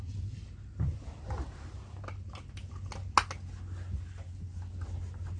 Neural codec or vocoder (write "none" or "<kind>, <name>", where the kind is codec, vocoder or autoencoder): none